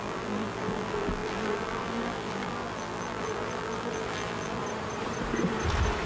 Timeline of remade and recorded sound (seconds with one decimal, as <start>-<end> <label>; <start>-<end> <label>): 0.0-4.6 remade; 4.6-6.1 recorded